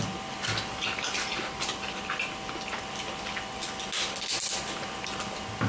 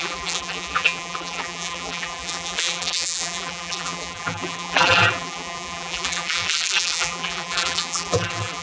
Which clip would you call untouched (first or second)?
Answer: first